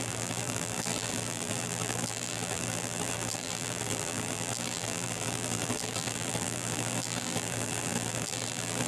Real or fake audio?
fake